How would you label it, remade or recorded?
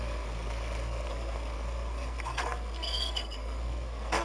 remade